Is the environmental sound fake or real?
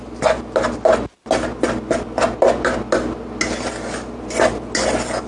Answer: real